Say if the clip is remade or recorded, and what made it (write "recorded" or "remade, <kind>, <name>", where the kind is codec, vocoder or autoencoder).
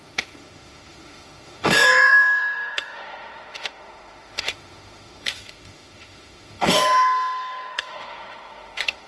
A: remade, autoencoder, DAC-VAE